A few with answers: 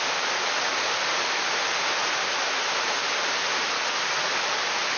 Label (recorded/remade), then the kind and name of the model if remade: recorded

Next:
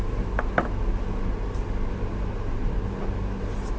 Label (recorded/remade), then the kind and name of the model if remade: recorded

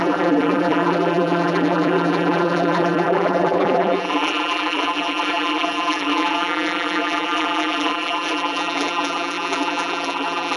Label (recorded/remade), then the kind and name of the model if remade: remade, vocoder, BigVGAN v2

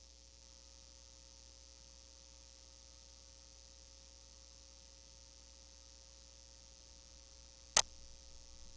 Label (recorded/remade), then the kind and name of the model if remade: recorded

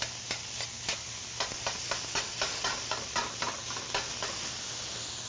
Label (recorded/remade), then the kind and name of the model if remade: recorded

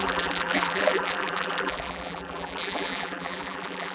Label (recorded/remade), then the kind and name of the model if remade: remade, vocoder, BigVGAN v2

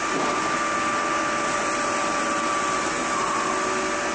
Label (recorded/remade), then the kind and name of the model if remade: recorded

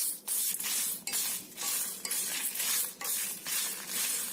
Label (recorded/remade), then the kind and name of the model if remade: recorded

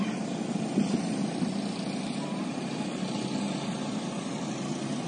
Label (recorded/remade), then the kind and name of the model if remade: recorded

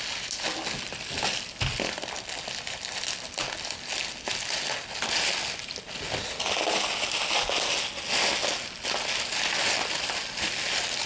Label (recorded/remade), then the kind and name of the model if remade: recorded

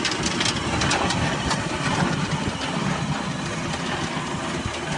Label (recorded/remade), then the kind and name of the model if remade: recorded